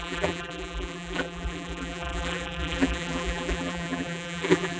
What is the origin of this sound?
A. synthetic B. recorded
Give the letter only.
A